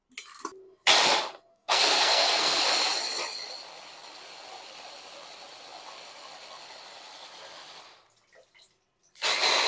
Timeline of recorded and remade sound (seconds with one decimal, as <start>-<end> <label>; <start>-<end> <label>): 0.0-1.5 recorded; 1.5-2.6 remade; 2.6-9.7 recorded